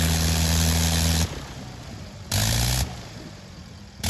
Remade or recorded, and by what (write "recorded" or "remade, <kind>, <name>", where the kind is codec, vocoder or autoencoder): recorded